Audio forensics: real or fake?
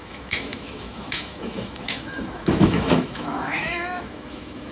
fake